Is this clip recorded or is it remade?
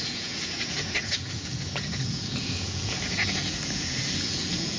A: remade